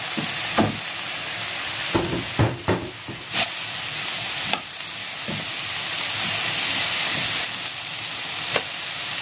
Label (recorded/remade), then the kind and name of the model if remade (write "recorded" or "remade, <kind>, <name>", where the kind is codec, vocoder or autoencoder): recorded